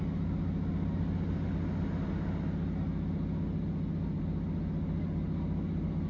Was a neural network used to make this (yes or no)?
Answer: no